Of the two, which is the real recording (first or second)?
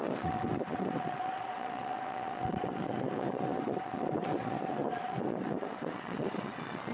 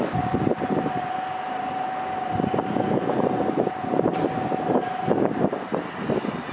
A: second